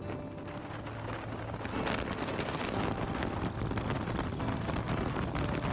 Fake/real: real